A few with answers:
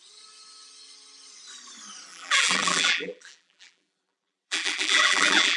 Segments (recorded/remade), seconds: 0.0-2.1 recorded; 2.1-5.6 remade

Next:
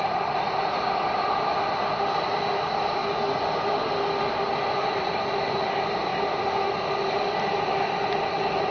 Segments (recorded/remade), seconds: 0.0-8.7 recorded

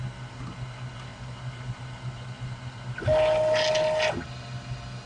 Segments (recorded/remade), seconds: 0.0-5.1 recorded

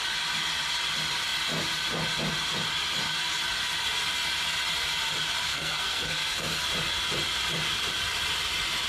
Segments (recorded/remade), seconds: 0.0-5.5 recorded; 5.5-6.6 remade; 6.6-8.9 recorded

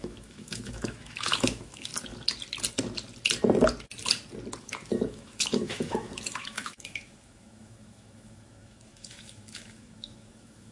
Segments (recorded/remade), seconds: 0.0-1.9 remade; 1.9-4.6 recorded; 4.6-10.7 remade

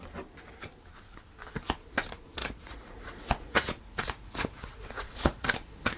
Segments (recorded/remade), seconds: 0.0-2.4 recorded; 2.4-5.5 remade; 5.5-6.0 recorded

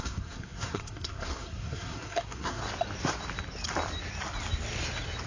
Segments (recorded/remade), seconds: 0.0-2.6 remade; 2.6-5.3 recorded

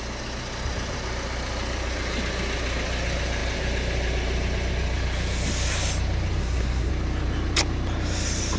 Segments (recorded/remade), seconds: 0.0-6.4 recorded; 6.4-6.9 remade; 6.9-8.6 recorded